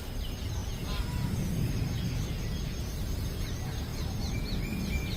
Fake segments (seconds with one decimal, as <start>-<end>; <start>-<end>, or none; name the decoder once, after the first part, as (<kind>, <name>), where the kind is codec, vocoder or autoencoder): 0.0-0.6 (vocoder, BigVGAN v2); 3.4-5.2